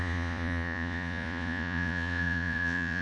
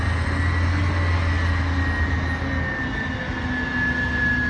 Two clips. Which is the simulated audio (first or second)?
first